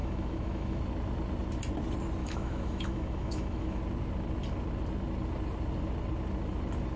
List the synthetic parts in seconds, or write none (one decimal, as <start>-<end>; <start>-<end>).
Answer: 0.0-0.8; 2.2-3.8